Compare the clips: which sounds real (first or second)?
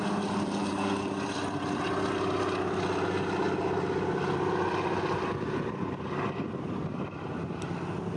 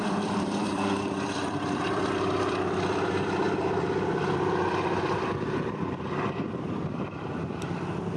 first